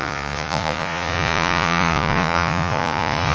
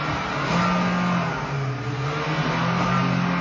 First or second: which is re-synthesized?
first